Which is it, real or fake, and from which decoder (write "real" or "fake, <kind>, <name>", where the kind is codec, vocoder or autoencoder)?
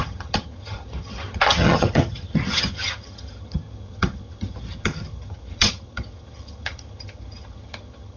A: fake, vocoder, HiFi-GAN